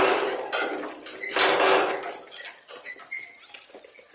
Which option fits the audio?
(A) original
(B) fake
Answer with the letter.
A